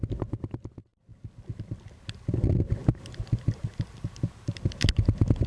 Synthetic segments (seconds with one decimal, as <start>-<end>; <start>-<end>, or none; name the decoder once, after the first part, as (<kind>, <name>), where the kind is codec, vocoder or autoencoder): none